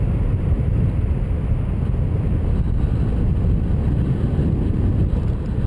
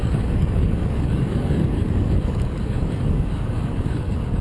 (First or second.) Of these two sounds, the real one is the first